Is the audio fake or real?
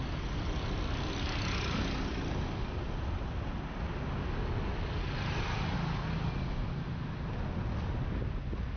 real